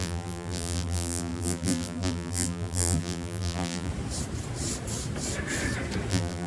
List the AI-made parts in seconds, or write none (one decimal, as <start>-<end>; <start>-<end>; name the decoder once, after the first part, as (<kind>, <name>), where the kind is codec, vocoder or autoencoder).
0.0-3.9 (vocoder, BigVGAN v2); 6.1-6.5